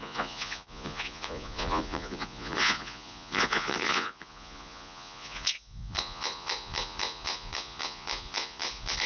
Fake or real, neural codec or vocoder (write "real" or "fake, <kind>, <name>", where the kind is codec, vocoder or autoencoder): fake, vocoder, Vocos